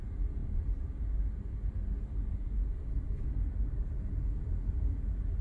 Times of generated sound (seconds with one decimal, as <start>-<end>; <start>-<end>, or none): none

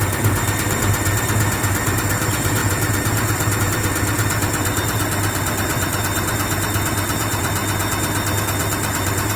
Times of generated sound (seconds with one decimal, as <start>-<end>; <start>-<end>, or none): 0.0-7.6; 8.4-9.4

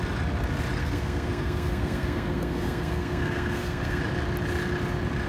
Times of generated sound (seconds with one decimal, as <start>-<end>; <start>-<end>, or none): 0.8-4.0

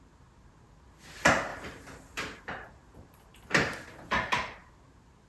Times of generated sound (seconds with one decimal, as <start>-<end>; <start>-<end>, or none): 1.5-4.7